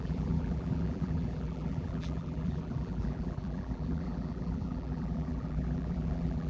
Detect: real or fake fake